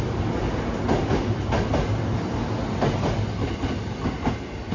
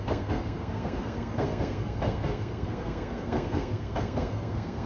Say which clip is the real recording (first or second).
first